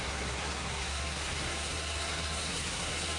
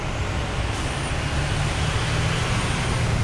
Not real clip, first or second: first